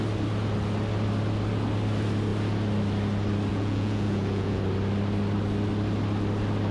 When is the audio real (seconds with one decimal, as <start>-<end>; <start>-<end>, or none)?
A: 0.0-3.5; 4.6-6.7